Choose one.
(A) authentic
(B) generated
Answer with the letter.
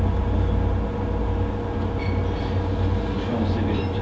A